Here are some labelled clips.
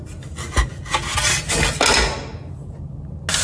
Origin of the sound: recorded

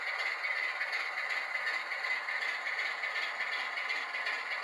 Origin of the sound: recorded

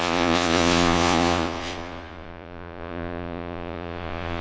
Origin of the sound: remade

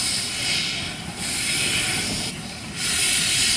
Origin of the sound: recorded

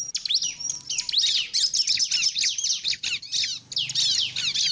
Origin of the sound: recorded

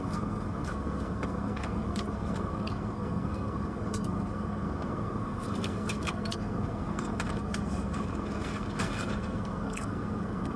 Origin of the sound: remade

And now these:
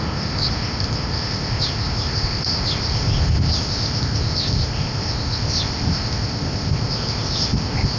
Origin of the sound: remade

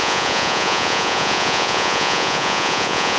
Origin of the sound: remade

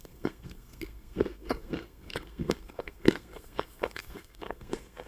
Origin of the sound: remade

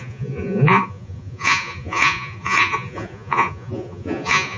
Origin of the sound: remade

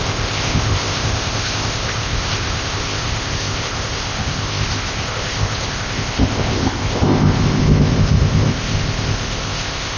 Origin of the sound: remade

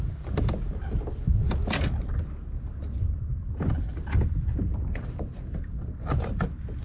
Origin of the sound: recorded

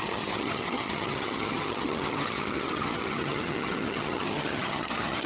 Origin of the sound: remade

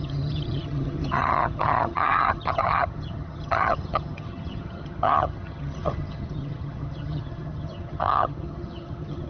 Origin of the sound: remade